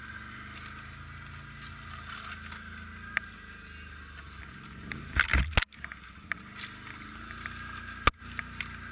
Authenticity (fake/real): real